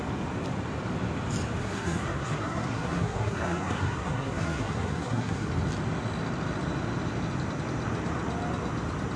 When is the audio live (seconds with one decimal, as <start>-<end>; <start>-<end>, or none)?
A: 0.0-1.6; 5.5-9.2